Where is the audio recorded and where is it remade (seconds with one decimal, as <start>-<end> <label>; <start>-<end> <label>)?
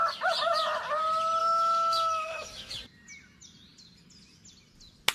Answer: 0.0-1.4 recorded; 1.4-2.7 remade; 2.7-5.1 recorded